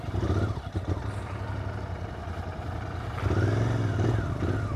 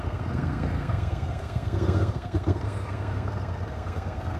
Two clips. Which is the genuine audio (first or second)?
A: first